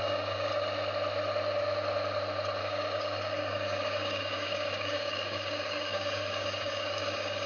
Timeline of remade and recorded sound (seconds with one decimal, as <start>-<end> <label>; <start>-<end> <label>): 0.0-0.5 remade; 0.5-2.6 recorded; 2.6-7.5 remade